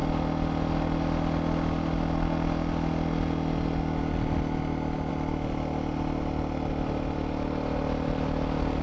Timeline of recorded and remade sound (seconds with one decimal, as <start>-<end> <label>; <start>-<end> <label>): 0.0-8.8 recorded